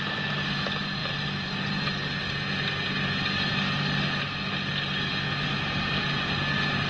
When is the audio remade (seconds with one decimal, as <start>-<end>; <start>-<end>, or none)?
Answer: none